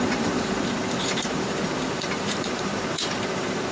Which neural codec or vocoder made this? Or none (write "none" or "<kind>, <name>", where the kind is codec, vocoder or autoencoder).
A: vocoder, BigVGAN v2